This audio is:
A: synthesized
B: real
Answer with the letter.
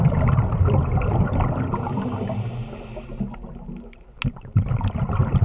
B